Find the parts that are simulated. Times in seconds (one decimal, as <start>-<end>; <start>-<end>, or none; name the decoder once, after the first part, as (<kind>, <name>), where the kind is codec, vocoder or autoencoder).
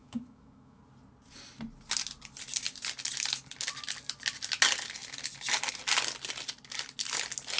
0.0-0.8 (autoencoder, DAC-VAE)